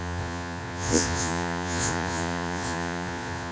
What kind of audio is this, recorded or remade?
remade